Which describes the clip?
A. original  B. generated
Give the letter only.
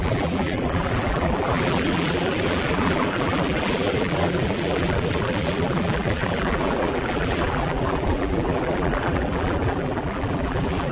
B